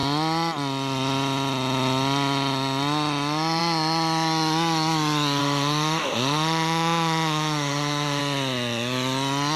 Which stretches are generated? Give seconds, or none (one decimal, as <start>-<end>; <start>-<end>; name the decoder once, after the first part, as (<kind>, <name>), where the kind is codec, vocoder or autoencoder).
5.4-8.2 (autoencoder, DAC-VAE)